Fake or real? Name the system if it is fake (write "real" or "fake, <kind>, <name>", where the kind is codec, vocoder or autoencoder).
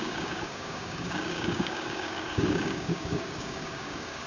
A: fake, codec, DAC